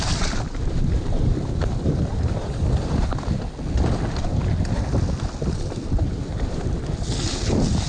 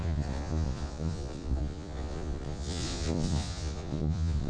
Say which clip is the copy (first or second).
second